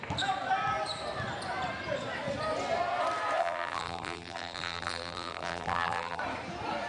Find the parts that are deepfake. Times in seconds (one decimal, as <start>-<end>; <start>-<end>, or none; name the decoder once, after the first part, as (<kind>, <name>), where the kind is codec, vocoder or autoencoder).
3.4-6.2 (vocoder, BigVGAN v2)